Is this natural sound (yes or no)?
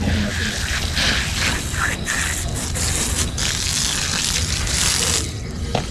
yes